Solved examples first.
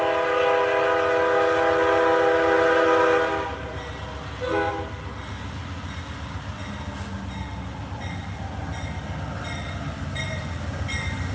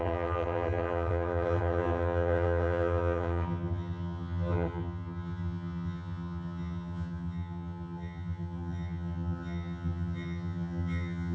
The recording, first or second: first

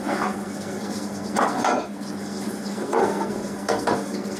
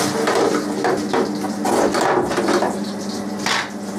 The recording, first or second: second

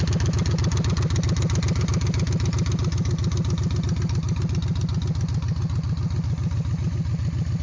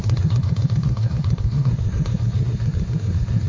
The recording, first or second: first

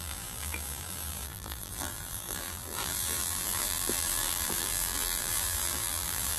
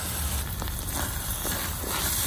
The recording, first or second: second